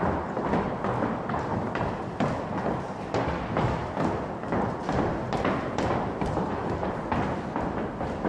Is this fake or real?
real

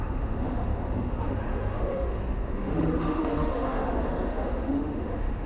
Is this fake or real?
fake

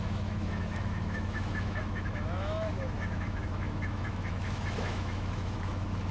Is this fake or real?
fake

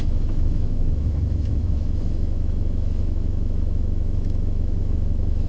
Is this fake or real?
fake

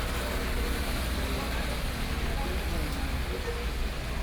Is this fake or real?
real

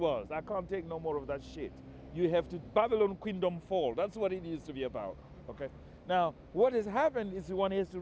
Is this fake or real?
real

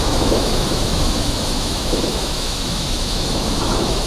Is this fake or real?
fake